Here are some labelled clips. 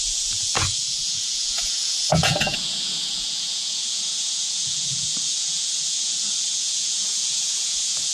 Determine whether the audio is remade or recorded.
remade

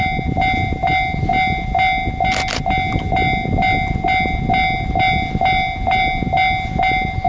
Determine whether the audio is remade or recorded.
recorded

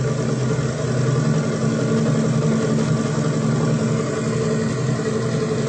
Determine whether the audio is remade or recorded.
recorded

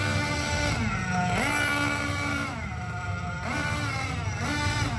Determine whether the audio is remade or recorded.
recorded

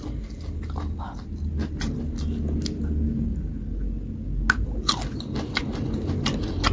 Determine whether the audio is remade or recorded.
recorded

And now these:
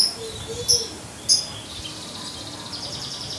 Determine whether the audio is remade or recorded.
recorded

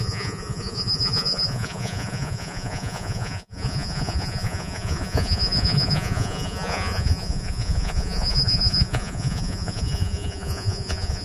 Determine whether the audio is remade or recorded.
remade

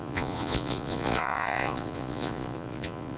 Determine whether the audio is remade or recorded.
remade